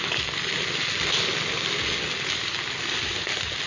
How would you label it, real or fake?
real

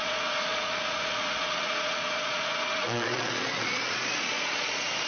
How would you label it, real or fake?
fake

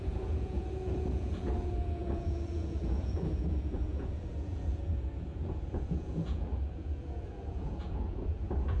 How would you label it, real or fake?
fake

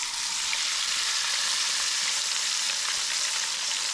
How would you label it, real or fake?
real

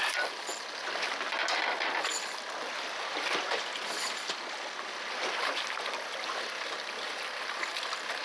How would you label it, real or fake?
real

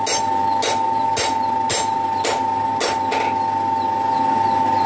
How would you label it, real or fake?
real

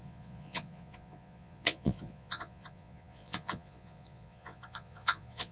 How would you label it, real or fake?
fake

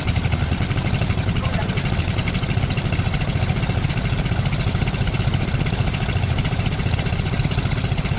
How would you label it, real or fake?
real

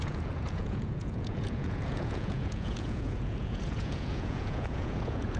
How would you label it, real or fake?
fake